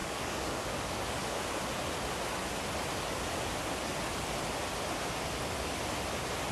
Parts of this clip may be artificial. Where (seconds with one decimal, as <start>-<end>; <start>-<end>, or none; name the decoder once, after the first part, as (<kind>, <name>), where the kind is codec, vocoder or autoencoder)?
0.0-1.6 (codec, DAC)